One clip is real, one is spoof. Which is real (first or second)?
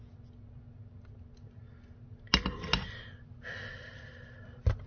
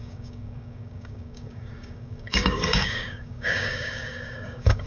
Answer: first